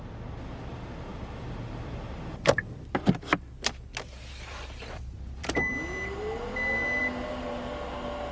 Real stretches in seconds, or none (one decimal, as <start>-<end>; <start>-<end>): 0.0-8.3

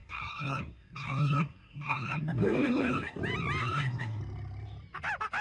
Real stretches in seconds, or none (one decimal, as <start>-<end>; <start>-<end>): 3.2-3.6; 4.2-5.4

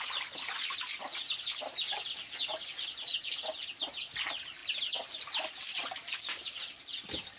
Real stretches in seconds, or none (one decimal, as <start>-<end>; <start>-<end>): 0.0-7.4

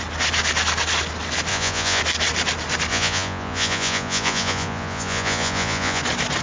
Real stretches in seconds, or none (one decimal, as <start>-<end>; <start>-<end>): 0.0-1.5; 2.0-2.9; 6.0-6.4

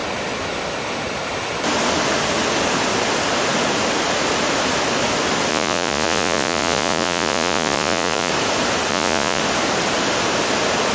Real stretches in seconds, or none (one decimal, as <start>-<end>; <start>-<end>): 0.0-5.5; 8.3-8.9; 9.4-10.9

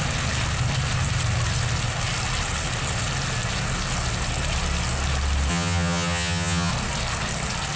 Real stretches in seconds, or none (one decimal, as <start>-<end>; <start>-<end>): 0.0-5.5; 6.7-7.8

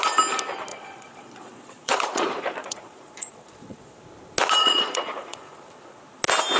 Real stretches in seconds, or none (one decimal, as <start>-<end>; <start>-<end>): 0.0-0.7; 4.0-4.6; 5.7-6.6

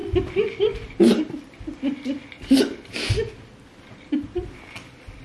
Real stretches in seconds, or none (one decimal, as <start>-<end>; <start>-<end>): 0.0-5.2